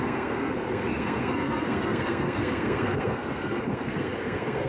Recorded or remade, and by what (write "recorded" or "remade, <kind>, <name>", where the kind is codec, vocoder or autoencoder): remade, codec, SNAC